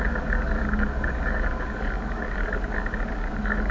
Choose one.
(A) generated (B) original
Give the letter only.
A